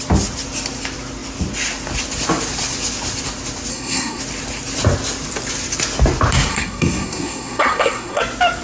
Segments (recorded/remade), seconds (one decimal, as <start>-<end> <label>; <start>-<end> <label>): 0.0-3.7 recorded; 3.7-4.2 remade; 4.2-6.5 recorded; 6.5-8.2 remade; 8.2-8.6 recorded